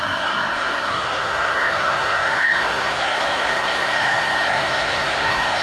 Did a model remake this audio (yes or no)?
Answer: yes